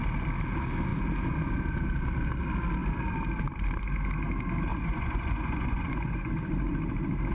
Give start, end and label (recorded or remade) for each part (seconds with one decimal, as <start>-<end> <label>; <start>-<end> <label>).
0.0-4.7 recorded; 4.7-6.3 remade; 6.3-7.3 recorded